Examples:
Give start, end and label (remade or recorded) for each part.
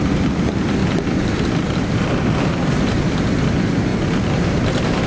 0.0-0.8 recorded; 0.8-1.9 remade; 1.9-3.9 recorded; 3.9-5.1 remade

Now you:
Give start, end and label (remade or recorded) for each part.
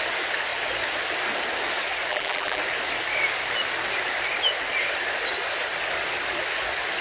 0.0-2.1 recorded; 2.1-2.6 remade; 2.6-7.0 recorded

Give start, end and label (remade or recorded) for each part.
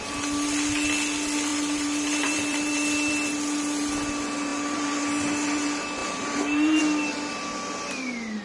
0.0-1.5 recorded; 1.5-3.1 remade; 3.1-4.5 recorded; 4.5-5.0 remade; 5.0-6.0 recorded; 6.0-6.8 remade; 6.8-8.4 recorded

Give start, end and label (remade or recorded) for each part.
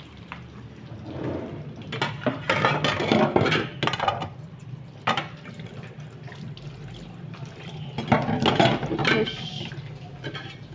0.0-9.0 recorded; 9.0-9.6 remade; 9.6-10.7 recorded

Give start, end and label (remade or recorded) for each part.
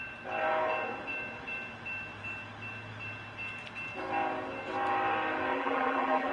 0.0-5.5 recorded; 5.5-6.3 remade